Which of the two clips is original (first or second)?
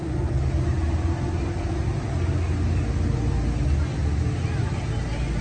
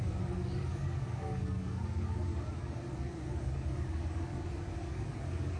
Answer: first